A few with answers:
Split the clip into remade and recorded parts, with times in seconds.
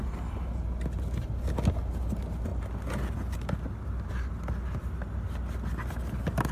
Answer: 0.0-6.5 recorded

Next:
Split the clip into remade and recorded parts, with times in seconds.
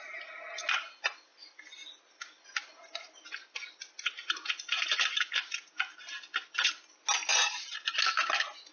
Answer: 0.0-8.7 recorded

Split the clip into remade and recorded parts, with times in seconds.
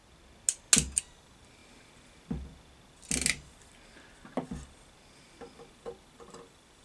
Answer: 0.0-1.0 recorded; 1.0-1.6 remade; 1.6-5.7 recorded; 5.7-6.8 remade